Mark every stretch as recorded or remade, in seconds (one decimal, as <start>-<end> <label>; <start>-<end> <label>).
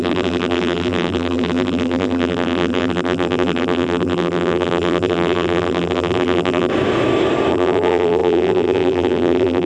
0.0-6.7 remade; 6.7-7.5 recorded; 7.5-9.7 remade